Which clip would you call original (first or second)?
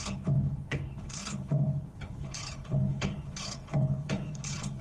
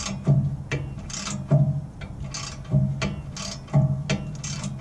second